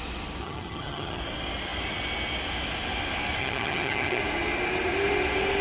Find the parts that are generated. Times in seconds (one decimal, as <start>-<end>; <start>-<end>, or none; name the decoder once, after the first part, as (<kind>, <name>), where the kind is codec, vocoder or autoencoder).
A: 0.4-1.2 (vocoder, HiFi-GAN); 3.4-4.2